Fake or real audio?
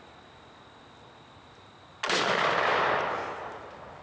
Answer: real